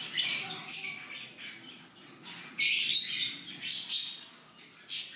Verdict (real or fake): real